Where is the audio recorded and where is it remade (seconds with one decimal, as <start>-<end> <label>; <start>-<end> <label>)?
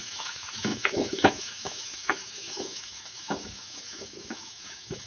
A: 0.0-5.1 remade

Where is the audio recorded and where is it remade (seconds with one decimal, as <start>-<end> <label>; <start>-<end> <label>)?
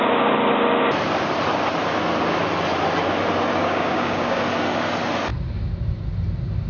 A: 0.0-3.6 recorded; 3.6-4.4 remade; 4.4-6.7 recorded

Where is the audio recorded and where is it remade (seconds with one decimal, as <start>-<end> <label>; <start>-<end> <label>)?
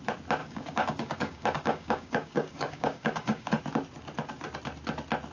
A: 0.0-0.4 recorded; 0.4-3.6 remade; 3.6-5.3 recorded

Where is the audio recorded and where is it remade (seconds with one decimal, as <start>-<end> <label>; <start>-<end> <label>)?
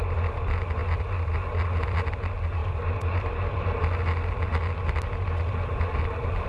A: 0.0-6.5 recorded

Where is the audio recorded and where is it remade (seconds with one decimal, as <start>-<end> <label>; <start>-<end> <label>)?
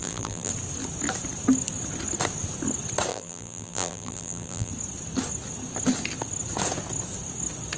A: 0.0-0.5 remade; 0.5-3.1 recorded; 3.1-4.7 remade; 4.7-7.8 recorded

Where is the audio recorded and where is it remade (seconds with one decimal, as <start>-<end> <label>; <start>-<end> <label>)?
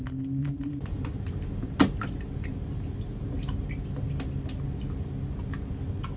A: 0.0-0.4 recorded; 0.4-4.1 remade; 4.1-6.2 recorded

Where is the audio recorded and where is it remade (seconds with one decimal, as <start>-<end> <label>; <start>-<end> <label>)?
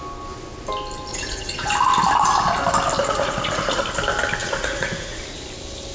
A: 0.0-1.1 recorded; 1.1-1.7 remade; 1.7-3.0 recorded; 3.0-3.8 remade; 3.8-4.4 recorded; 4.4-5.2 remade; 5.2-5.9 recorded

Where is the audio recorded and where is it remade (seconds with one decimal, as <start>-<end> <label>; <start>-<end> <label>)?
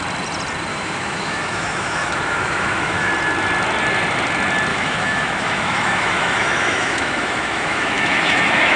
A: 0.0-0.7 recorded; 0.7-3.1 remade; 3.1-4.7 recorded; 4.7-8.8 remade